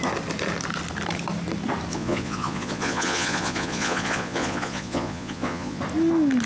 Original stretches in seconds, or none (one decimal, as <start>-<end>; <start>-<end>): 0.0-1.9; 5.8-6.5